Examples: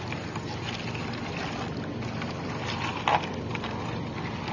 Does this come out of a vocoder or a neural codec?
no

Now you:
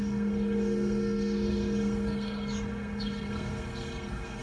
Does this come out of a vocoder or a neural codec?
yes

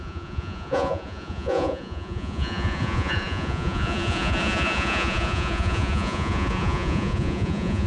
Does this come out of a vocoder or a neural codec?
yes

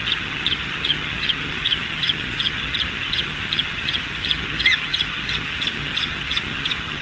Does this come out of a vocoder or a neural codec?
yes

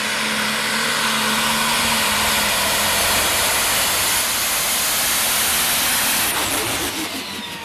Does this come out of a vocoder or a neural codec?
no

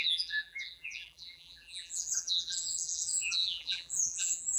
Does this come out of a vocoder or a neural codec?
yes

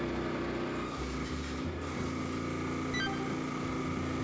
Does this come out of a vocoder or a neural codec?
no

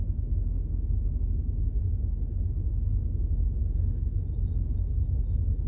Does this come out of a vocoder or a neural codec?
yes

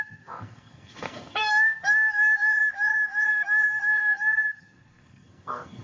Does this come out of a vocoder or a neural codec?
yes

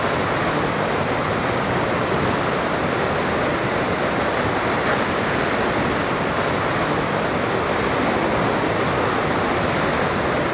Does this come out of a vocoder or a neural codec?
no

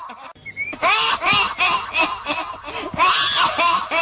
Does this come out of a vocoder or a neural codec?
no